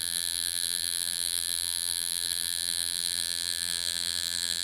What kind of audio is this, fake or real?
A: fake